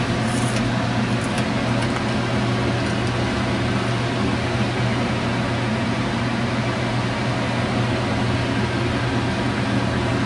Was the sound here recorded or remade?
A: recorded